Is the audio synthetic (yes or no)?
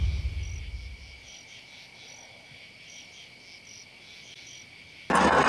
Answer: no